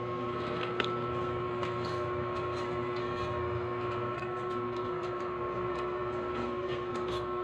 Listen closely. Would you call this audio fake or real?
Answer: fake